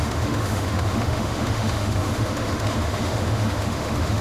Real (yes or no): no